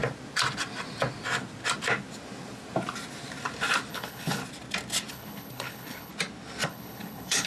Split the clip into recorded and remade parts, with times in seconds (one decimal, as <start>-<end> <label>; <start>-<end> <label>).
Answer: 0.0-3.9 recorded; 3.9-4.4 remade; 4.4-5.1 recorded; 5.1-6.1 remade; 6.1-6.7 recorded; 6.7-7.5 remade